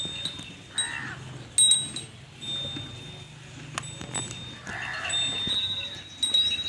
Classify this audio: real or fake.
real